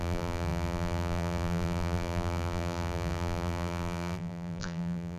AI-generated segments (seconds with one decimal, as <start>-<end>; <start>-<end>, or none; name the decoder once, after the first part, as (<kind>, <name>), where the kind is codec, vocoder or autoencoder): 0.0-5.2 (vocoder, BigVGAN v2)